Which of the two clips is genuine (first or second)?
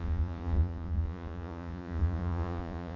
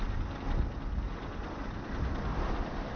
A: second